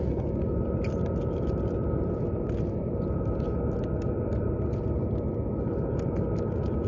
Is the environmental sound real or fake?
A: real